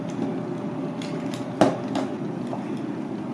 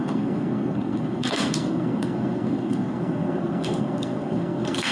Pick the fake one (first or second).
second